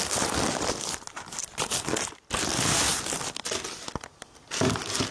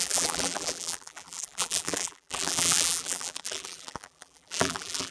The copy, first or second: second